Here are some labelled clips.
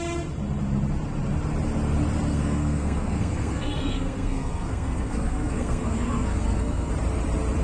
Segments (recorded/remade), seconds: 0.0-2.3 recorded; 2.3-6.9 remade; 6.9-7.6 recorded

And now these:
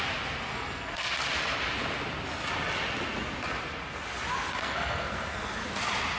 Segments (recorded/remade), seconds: 0.0-0.5 recorded; 0.5-1.1 remade; 1.1-4.6 recorded; 4.6-5.5 remade; 5.5-6.2 recorded

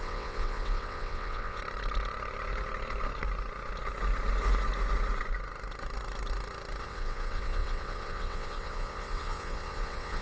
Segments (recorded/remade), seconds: 0.0-1.6 remade; 1.6-6.8 recorded; 6.8-10.2 remade